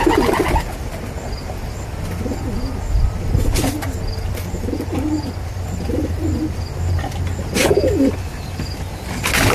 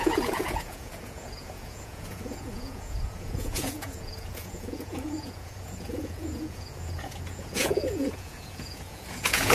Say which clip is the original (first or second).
first